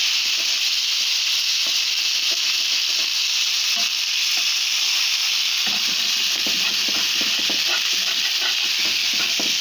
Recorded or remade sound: recorded